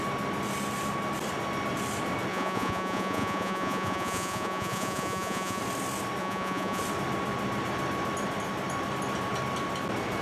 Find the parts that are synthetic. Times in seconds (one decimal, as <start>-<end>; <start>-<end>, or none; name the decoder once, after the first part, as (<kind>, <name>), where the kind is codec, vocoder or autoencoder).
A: 2.3-5.6 (vocoder, Vocos); 6.2-6.8